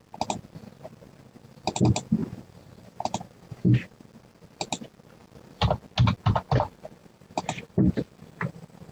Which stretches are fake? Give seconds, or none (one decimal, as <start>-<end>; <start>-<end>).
2.2-4.2; 5.2-5.7; 7.0-7.9